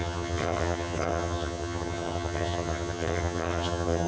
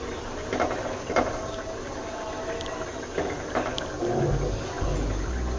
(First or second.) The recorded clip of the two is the second